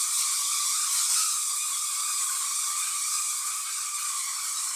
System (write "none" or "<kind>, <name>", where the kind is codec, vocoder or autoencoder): none